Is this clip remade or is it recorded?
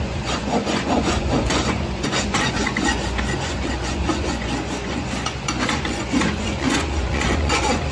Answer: remade